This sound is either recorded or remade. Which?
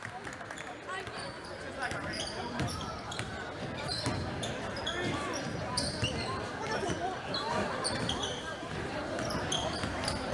remade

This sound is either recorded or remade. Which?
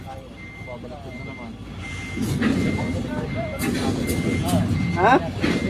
recorded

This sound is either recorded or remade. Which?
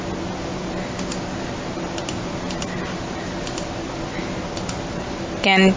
recorded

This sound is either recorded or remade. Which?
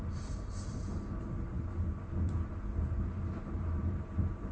remade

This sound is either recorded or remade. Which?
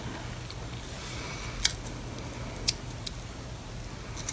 recorded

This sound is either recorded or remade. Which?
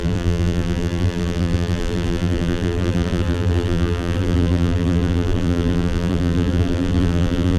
remade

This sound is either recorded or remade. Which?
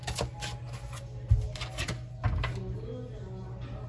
recorded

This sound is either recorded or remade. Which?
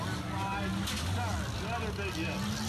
recorded